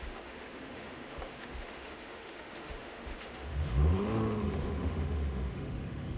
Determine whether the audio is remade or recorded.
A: remade